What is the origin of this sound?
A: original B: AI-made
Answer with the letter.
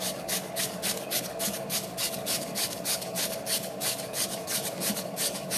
B